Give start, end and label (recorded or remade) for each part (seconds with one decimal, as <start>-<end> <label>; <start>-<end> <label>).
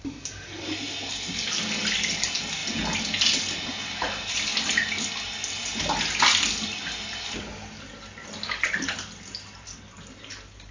0.0-10.7 recorded